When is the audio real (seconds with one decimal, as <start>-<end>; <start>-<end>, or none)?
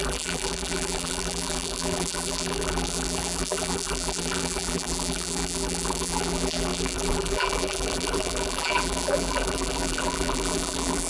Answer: none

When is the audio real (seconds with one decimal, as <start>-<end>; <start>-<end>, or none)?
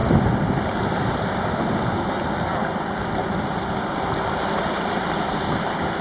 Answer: 0.0-6.0